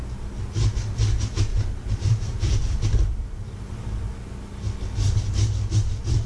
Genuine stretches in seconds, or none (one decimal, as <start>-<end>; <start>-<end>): 0.0-1.5; 2.6-3.0; 3.9-6.3